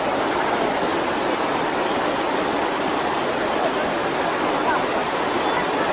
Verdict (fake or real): real